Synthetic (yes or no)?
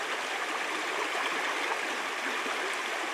no